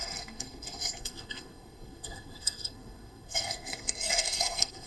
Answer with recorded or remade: remade